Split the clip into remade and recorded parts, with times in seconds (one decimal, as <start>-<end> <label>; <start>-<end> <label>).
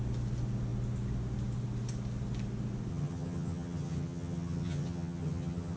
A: 0.0-2.9 recorded; 2.9-5.8 remade